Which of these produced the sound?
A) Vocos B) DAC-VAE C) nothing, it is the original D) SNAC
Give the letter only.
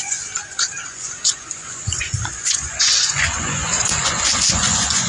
A